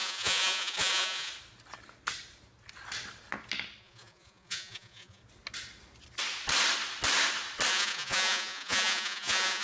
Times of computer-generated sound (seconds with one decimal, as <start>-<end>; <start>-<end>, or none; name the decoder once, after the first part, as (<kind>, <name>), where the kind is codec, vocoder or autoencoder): 0.0-1.3 (vocoder, Vocos); 3.8-5.2; 7.7-9.6